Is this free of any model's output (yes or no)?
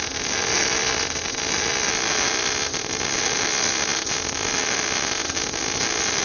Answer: yes